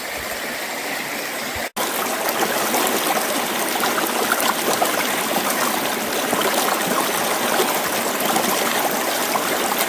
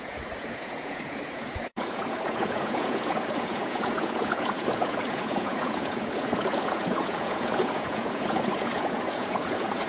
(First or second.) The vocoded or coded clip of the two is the second